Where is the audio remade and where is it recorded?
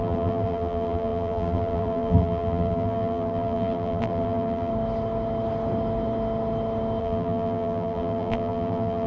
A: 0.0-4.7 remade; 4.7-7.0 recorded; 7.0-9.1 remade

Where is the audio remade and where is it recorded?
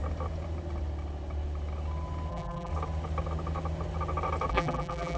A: 0.0-2.3 recorded; 2.3-2.7 remade; 2.7-4.5 recorded; 4.5-5.2 remade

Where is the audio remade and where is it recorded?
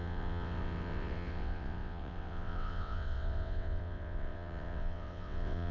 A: 0.0-5.7 remade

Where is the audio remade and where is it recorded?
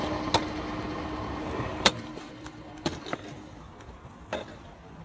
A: 0.0-1.7 recorded; 1.7-5.0 remade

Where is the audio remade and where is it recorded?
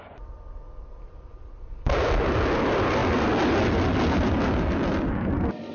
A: 0.0-5.7 remade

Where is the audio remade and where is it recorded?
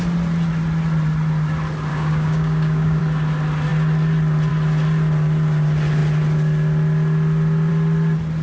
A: 0.0-1.9 recorded; 1.9-3.0 remade; 3.0-8.4 recorded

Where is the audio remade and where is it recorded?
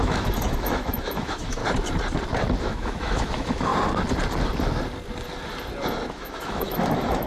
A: 0.0-1.6 remade; 1.6-2.6 recorded; 2.6-3.7 remade; 3.7-6.1 recorded; 6.1-7.3 remade